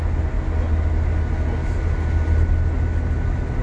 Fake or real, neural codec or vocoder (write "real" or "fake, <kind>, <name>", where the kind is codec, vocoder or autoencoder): real